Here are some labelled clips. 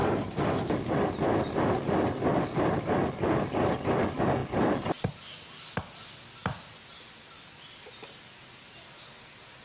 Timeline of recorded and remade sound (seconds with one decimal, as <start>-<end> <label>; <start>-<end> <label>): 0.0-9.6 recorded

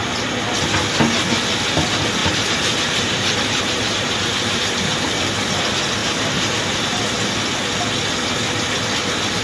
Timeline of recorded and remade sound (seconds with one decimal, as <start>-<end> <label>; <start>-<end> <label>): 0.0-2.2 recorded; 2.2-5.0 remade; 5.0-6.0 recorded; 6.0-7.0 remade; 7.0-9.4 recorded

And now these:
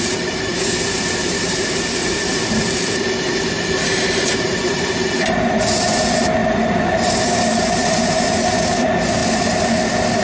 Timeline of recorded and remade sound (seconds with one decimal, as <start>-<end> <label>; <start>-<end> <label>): 0.0-9.2 remade; 9.2-10.2 recorded

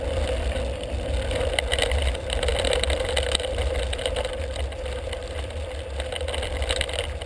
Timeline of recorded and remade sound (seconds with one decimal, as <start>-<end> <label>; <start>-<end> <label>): 0.0-7.3 recorded